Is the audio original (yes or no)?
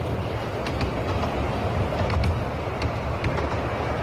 yes